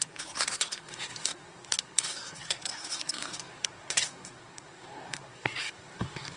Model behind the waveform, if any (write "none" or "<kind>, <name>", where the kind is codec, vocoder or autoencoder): codec, SNAC